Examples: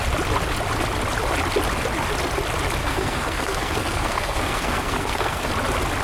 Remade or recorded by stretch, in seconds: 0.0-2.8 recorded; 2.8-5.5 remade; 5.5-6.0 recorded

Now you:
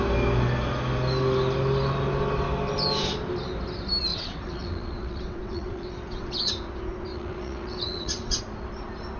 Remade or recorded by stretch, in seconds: 0.0-4.1 recorded; 4.1-6.5 remade; 6.5-7.1 recorded; 7.1-8.4 remade; 8.4-9.2 recorded